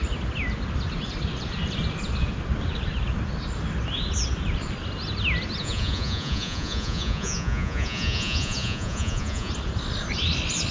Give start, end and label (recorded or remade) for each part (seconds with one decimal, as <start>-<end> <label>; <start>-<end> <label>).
0.0-5.6 recorded; 5.6-9.5 remade; 9.5-10.7 recorded